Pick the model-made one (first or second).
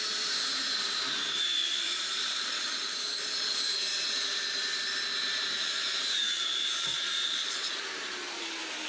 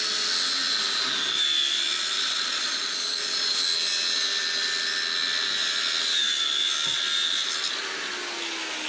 first